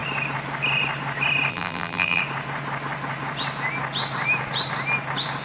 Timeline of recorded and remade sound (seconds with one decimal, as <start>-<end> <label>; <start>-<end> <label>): 0.0-1.5 recorded; 1.5-2.2 remade; 2.2-5.4 recorded